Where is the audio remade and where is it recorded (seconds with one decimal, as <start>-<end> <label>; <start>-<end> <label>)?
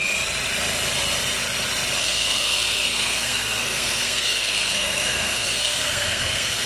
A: 0.0-2.0 recorded; 2.0-6.7 remade